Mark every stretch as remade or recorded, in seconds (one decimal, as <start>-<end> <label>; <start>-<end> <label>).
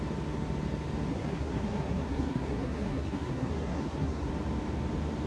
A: 0.0-1.1 recorded; 1.1-4.3 remade; 4.3-5.3 recorded